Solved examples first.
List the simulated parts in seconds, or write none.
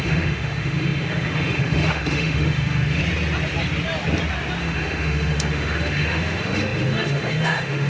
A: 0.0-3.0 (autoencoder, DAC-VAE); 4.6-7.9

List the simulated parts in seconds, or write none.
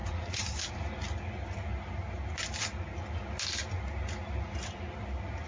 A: 0.0-0.6 (vocoder, Vocos)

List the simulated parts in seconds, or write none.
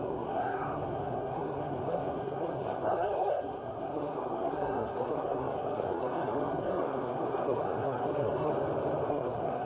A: 0.0-8.5 (codec, SNAC); 9.1-9.7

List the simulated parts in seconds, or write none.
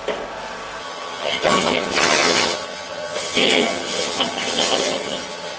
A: 0.8-5.6 (vocoder, HiFi-GAN)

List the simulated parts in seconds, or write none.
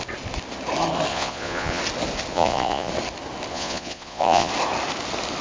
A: 1.1-1.8 (vocoder, Vocos); 2.3-2.9; 3.5-4.5